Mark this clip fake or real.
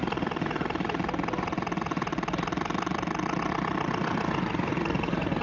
real